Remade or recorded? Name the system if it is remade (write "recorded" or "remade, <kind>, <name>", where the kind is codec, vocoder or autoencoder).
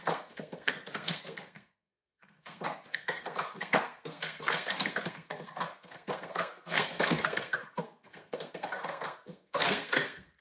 remade, codec, SNAC